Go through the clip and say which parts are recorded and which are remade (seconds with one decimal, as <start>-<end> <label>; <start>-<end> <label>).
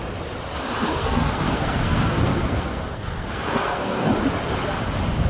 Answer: 0.0-0.9 recorded; 0.9-4.1 remade; 4.1-5.3 recorded